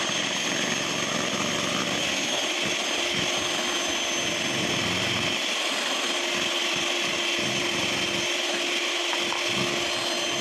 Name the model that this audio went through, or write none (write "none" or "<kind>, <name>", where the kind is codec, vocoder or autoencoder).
none